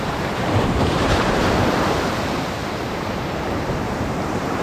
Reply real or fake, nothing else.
fake